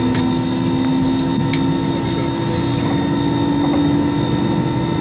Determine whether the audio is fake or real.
real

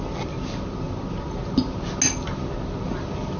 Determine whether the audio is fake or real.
real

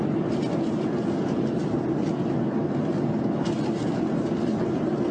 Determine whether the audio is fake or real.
real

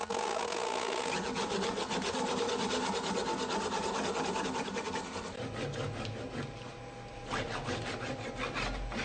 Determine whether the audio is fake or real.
real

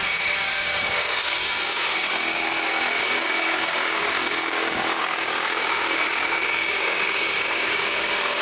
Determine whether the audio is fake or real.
fake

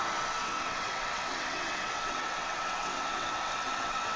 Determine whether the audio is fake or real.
fake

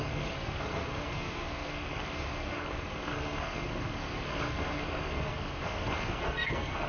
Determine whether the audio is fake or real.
fake